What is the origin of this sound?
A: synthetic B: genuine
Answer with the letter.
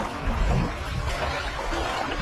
B